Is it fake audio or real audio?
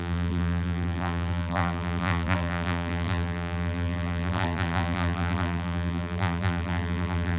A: fake